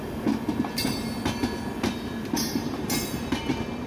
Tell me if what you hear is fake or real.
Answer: real